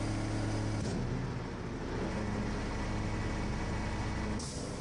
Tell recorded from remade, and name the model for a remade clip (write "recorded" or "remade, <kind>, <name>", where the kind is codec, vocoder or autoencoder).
recorded